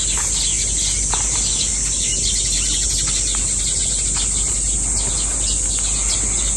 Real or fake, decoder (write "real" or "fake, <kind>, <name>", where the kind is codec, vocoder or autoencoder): real